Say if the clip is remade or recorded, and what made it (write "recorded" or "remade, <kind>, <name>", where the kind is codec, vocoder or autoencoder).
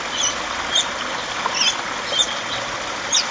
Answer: recorded